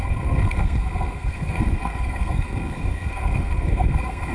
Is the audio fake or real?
fake